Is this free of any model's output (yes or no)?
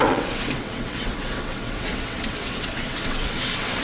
no